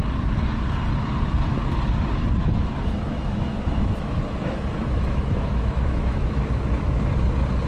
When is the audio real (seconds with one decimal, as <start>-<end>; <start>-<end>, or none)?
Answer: 0.0-2.4; 7.0-7.7